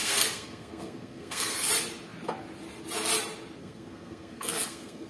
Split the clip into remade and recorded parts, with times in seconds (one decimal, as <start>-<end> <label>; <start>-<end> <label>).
0.0-1.7 remade; 1.7-3.6 recorded; 3.6-5.1 remade